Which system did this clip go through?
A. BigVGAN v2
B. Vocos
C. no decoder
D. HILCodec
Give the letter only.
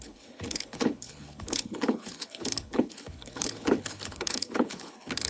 D